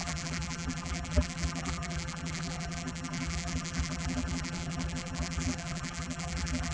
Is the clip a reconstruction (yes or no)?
yes